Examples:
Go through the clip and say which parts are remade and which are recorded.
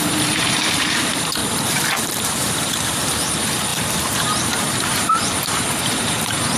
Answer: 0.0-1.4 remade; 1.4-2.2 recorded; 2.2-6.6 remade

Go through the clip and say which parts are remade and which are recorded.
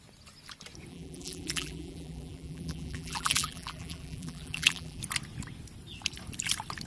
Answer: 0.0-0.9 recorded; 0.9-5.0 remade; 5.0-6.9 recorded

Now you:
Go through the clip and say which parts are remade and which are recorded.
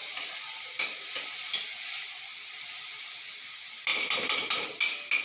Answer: 0.0-3.1 remade; 3.1-5.2 recorded